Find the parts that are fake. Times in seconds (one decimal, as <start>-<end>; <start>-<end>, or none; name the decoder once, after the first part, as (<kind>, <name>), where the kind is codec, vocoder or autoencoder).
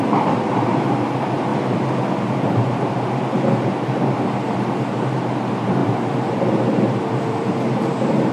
0.0-1.5 (vocoder, BigVGAN v2); 2.5-8.3